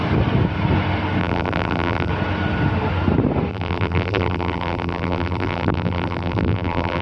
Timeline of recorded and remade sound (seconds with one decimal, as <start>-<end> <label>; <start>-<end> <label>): 0.0-1.2 recorded; 1.2-2.1 remade; 2.1-3.5 recorded; 3.5-7.0 remade